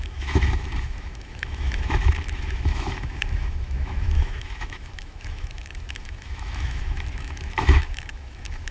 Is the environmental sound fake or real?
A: fake